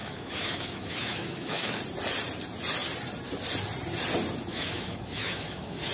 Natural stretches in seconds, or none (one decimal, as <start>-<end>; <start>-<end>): 1.8-4.5